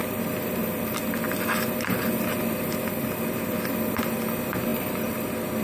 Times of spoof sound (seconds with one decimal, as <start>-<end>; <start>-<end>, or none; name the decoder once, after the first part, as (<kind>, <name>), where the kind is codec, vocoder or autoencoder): 4.7-5.6 (vocoder, BigVGAN v2)